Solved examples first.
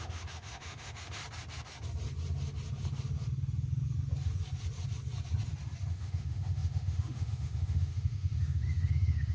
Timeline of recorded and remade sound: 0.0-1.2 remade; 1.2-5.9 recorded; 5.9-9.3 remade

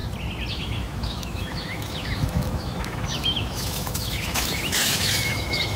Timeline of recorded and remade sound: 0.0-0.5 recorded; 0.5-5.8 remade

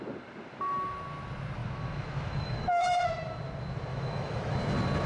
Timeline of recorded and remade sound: 0.0-1.6 recorded; 1.6-3.1 remade; 3.1-3.9 recorded; 3.9-4.5 remade; 4.5-5.1 recorded

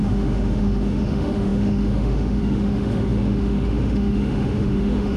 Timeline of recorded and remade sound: 0.0-5.2 remade